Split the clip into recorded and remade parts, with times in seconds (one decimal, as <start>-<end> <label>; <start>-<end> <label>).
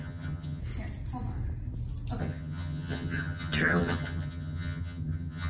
0.0-0.6 remade; 0.6-2.2 recorded; 2.2-5.5 remade